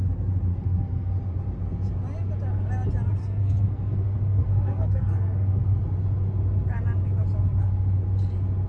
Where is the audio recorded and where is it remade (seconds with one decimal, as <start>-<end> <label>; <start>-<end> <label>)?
0.0-0.5 recorded; 0.5-1.1 remade; 1.1-3.2 recorded; 3.2-5.8 remade; 5.8-8.7 recorded